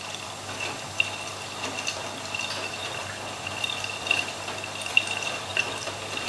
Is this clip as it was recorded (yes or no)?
no